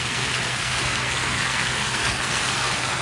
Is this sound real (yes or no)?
no